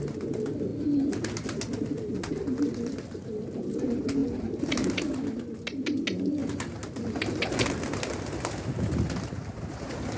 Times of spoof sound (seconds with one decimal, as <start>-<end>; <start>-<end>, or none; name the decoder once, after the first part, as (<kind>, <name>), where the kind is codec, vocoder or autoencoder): none